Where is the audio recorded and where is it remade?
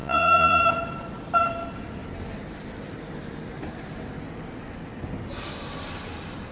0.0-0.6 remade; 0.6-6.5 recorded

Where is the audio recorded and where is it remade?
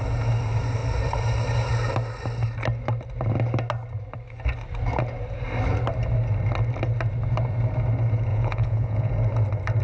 0.0-8.3 recorded; 8.3-9.1 remade; 9.1-9.8 recorded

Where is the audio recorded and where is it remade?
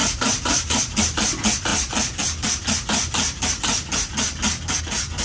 0.0-0.8 remade; 0.8-5.2 recorded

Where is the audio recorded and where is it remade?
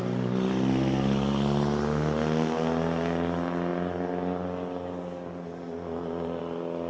0.0-6.9 recorded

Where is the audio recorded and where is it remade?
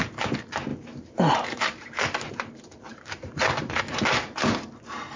0.0-0.7 recorded; 0.7-3.8 remade; 3.8-5.2 recorded